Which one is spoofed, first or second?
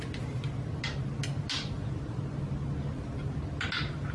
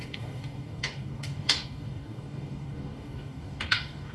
second